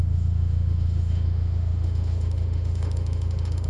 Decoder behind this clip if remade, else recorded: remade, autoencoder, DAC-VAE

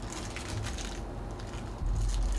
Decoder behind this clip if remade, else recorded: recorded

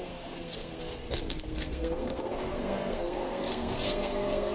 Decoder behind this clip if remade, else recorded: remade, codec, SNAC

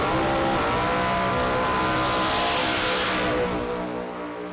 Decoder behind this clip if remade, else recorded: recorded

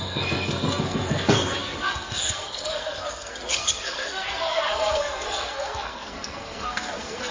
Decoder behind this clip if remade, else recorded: remade, codec, SNAC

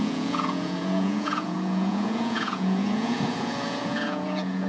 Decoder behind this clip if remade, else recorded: remade, vocoder, Vocos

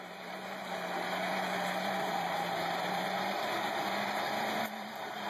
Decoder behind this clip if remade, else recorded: remade, vocoder, BigVGAN v2